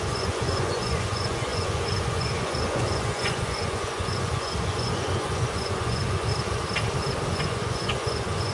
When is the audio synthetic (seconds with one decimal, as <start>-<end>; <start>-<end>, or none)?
0.0-6.3; 7.3-8.5